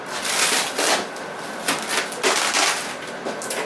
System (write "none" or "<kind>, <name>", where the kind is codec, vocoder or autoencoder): none